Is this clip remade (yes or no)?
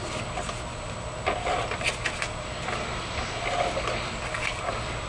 no